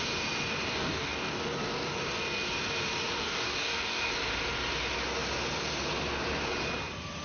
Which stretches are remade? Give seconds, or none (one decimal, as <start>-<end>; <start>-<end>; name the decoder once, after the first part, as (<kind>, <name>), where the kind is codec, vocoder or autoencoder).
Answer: 0.7-1.4 (codec, DAC); 3.2-4.1